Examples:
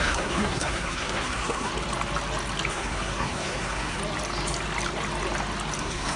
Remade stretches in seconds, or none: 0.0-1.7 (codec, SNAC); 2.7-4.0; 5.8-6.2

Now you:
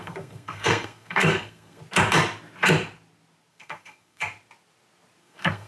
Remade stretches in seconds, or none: 0.0-1.8 (codec, SNAC); 3.5-4.2; 5.2-5.7

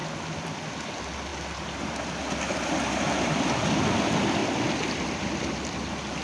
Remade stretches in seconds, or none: none

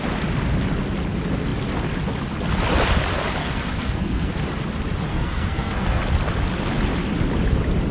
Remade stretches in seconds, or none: 3.4-4.3 (codec, SNAC); 5.1-6.0